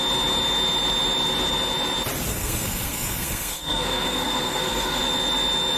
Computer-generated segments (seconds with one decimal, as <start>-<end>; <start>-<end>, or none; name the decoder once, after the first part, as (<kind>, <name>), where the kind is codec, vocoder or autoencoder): 2.3-5.0 (codec, SNAC)